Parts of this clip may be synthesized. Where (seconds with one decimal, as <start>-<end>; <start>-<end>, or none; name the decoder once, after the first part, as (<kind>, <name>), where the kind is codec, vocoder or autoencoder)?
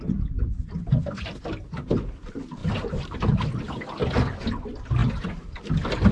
2.6-3.6 (vocoder, BigVGAN v2)